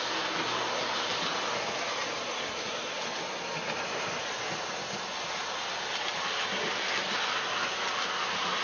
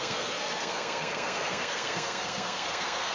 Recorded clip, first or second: first